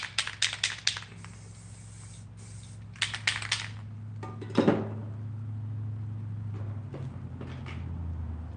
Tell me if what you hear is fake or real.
real